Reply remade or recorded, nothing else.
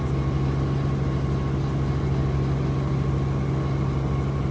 recorded